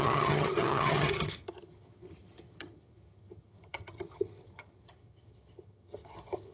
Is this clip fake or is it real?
fake